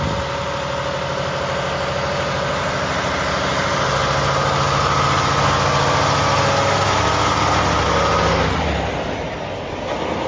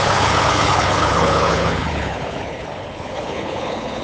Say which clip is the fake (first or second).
second